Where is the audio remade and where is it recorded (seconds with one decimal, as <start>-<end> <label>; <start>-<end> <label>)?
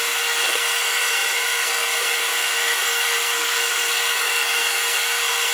0.0-5.5 remade